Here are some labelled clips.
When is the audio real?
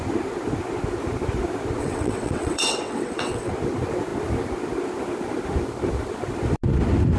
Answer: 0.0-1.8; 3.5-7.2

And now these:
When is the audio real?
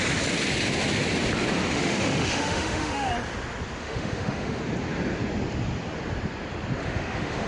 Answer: 0.0-1.7; 3.1-3.8; 4.6-6.8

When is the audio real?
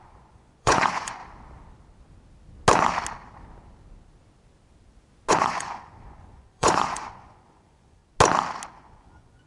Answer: 1.2-5.3; 8.0-8.7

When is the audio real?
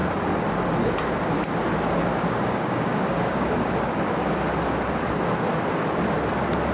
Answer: 0.0-2.1; 3.7-6.7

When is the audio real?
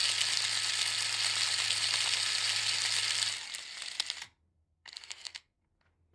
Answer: 0.0-4.5; 5.6-6.1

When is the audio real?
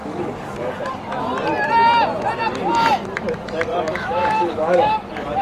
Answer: 0.8-3.7; 4.9-5.4